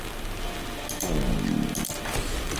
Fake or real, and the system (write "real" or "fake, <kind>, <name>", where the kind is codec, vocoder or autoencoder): real